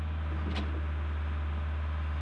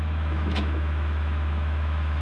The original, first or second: first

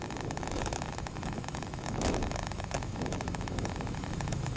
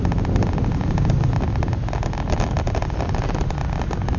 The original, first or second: second